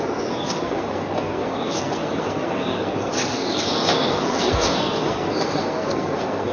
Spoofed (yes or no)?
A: yes